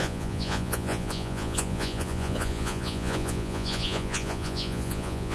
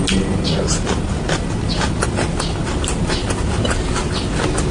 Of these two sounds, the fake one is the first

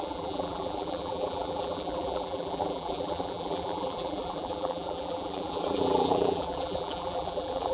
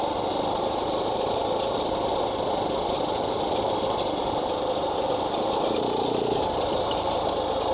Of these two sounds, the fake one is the first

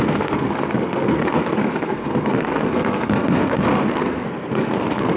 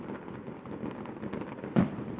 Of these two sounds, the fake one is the first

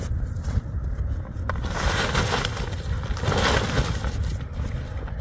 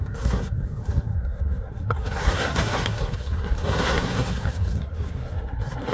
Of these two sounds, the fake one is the second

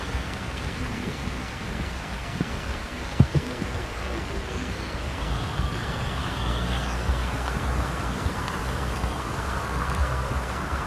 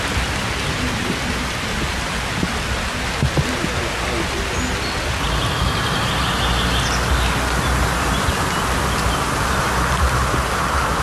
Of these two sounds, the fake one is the first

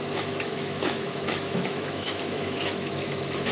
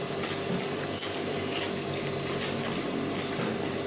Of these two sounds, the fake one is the first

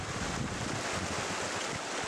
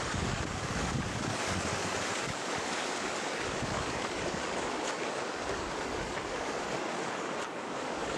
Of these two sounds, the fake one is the second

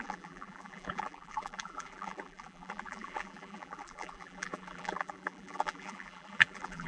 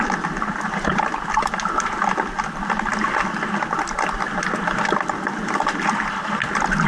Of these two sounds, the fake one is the first